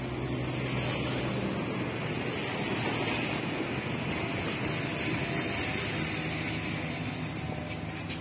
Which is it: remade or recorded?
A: recorded